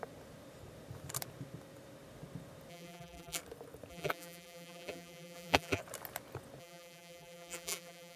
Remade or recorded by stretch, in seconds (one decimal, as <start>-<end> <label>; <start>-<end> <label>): 0.0-2.7 recorded; 2.7-3.4 remade; 3.4-3.9 recorded; 3.9-5.8 remade; 5.8-6.6 recorded; 6.6-8.2 remade